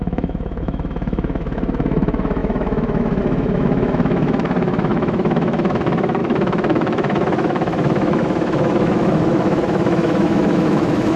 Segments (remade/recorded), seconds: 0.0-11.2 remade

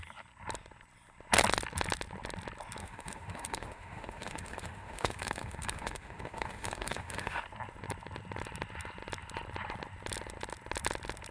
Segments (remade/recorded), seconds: 0.0-2.8 recorded; 2.8-7.4 remade; 7.4-11.3 recorded

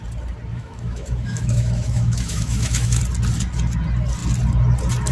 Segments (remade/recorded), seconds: 0.0-0.5 recorded; 0.5-3.0 remade; 3.0-5.1 recorded